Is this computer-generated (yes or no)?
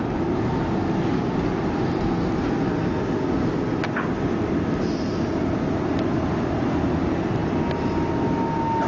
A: no